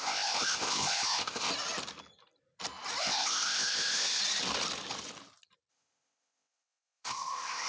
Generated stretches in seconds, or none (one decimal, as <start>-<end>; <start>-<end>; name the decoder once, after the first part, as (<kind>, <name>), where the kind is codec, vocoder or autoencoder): 0.0-1.5 (codec, ZipCodec); 3.0-4.2; 5.7-7.7